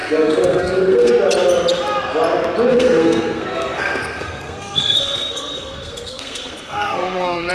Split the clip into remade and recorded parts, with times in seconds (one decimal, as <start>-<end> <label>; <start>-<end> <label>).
0.0-1.1 remade; 1.1-2.7 recorded; 2.7-7.5 remade